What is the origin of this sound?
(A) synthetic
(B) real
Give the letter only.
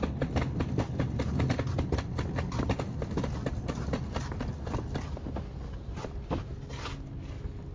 B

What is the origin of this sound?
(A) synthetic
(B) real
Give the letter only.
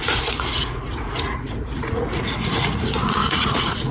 A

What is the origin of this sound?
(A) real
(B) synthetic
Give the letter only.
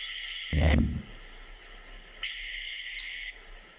A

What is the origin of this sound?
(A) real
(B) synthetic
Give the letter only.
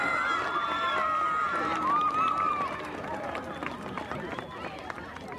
A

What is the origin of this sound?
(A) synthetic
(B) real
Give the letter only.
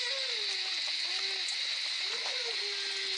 B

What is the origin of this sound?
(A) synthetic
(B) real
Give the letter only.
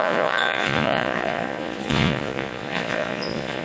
A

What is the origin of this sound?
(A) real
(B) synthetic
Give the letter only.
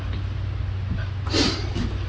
A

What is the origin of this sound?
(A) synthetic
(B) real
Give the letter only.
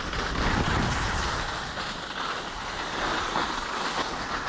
B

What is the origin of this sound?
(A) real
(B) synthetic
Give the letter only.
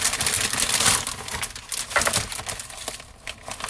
A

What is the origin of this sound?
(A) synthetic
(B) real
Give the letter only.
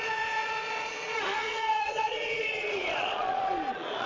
A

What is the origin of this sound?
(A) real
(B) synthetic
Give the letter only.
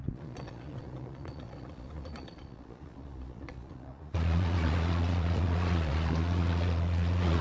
B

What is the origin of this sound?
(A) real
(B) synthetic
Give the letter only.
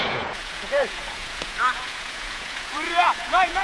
B